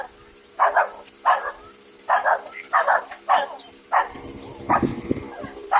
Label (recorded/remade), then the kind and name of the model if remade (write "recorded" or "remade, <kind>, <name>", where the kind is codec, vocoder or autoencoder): recorded